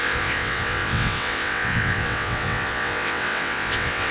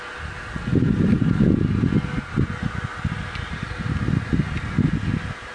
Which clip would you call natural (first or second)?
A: second